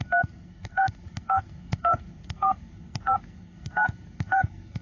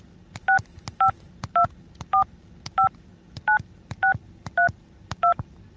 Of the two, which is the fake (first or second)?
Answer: first